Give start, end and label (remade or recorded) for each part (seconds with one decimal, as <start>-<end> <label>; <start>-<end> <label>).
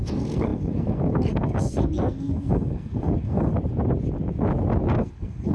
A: 0.0-3.5 remade; 3.5-5.0 recorded; 5.0-5.5 remade